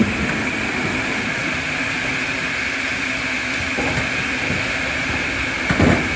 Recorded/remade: recorded